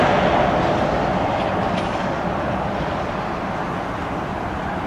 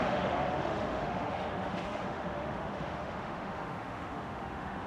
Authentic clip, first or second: first